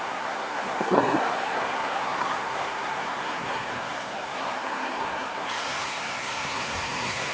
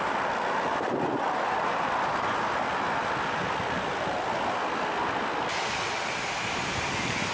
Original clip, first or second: second